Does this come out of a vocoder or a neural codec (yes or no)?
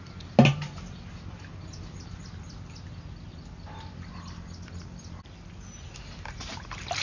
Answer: no